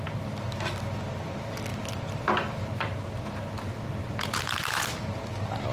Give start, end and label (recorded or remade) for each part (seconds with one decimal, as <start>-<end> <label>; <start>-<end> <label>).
0.0-4.0 recorded; 4.0-4.8 remade; 4.8-5.7 recorded